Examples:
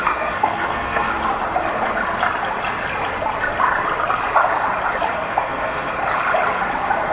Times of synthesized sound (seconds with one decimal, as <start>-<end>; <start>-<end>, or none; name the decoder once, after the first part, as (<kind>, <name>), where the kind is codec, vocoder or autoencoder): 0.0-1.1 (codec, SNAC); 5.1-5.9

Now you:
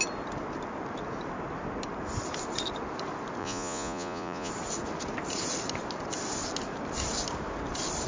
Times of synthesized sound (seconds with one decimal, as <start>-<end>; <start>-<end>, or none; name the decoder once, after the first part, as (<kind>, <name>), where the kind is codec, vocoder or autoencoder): 3.4-4.5 (vocoder, Vocos)

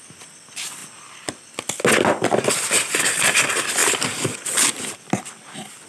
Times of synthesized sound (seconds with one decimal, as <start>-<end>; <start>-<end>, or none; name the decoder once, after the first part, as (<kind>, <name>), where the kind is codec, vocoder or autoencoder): none